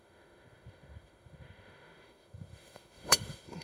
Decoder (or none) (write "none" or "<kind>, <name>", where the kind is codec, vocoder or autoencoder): autoencoder, DAC-VAE